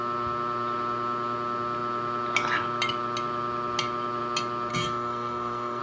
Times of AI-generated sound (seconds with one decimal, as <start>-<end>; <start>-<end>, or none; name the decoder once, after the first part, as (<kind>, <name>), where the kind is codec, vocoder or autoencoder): 4.7-5.8 (codec, SNAC)